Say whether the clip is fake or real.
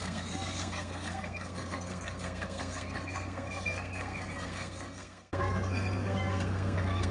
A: fake